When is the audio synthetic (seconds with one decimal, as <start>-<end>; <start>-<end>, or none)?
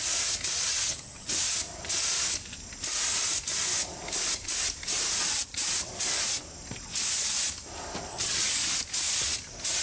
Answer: 0.7-1.3; 8.1-8.7